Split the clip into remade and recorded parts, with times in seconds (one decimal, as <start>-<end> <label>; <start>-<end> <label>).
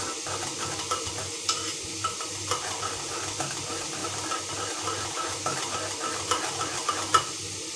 0.0-7.8 recorded